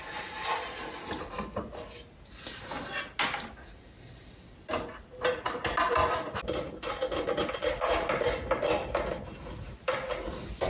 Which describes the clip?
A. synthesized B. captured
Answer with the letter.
B